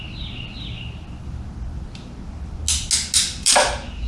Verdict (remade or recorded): recorded